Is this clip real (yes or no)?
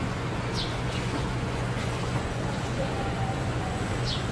no